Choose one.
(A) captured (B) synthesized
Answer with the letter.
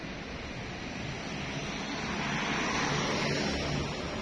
A